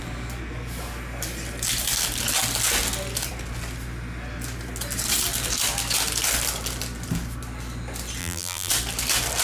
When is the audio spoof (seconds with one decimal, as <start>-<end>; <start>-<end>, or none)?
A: 8.2-8.7

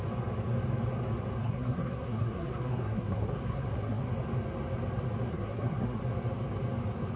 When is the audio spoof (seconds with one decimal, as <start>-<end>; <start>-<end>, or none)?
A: 1.4-4.1; 5.3-6.0

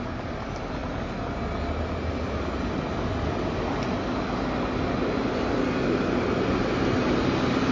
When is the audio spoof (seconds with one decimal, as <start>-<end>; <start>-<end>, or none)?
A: none

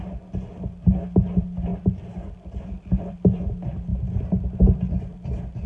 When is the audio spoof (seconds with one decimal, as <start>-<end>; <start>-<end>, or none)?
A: none